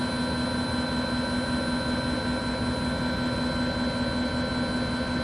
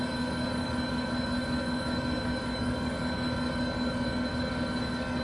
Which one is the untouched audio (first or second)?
first